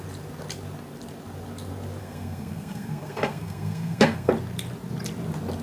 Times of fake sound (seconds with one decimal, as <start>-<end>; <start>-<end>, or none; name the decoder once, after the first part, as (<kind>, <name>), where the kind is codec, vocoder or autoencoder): 2.0-4.3 (codec, SNAC)